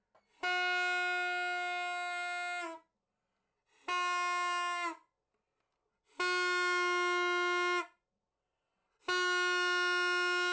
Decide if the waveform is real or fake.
real